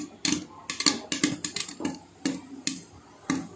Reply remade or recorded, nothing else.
recorded